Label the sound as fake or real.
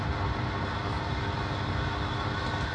real